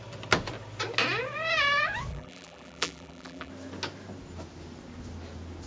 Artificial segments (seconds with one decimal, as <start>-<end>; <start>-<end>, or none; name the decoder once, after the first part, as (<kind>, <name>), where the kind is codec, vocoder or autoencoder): 2.1-3.5 (vocoder, BigVGAN v2)